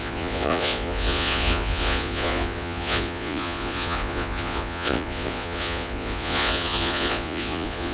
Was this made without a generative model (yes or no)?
no